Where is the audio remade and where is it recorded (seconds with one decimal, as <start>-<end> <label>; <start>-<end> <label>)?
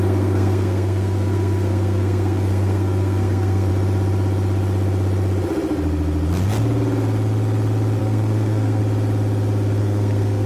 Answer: 0.0-3.7 remade; 3.7-8.0 recorded; 8.0-8.8 remade; 8.8-9.8 recorded; 9.8-10.5 remade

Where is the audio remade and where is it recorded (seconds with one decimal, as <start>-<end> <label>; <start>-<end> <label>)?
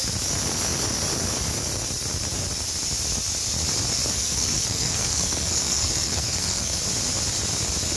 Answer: 0.0-4.0 recorded; 4.0-6.8 remade; 6.8-8.0 recorded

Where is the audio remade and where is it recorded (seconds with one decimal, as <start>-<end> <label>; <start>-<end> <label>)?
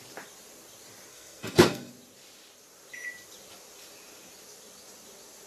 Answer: 0.0-1.1 recorded; 1.1-1.9 remade; 1.9-5.5 recorded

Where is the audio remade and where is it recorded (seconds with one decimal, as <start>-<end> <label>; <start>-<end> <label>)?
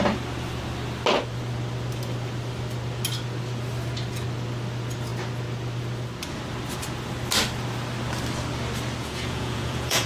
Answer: 0.0-9.0 recorded; 9.0-10.1 remade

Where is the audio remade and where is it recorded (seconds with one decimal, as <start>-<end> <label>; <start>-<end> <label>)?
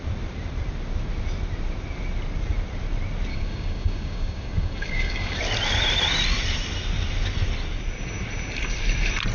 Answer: 0.0-3.3 recorded; 3.3-5.4 remade; 5.4-9.3 recorded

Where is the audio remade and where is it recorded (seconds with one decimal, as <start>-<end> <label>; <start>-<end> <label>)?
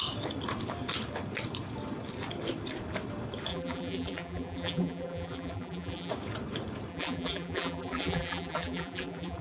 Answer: 0.0-3.5 recorded; 3.5-6.1 remade; 6.1-6.9 recorded; 6.9-9.4 remade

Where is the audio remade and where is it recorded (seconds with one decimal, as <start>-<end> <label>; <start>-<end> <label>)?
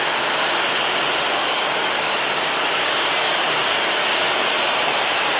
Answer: 0.0-1.4 recorded; 1.4-4.5 remade; 4.5-5.4 recorded